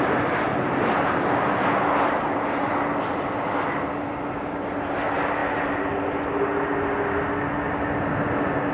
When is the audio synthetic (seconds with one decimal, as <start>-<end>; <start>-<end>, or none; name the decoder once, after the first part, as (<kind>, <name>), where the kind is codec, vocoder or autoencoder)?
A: none